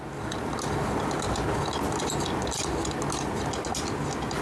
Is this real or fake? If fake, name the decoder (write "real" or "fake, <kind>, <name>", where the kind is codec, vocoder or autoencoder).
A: real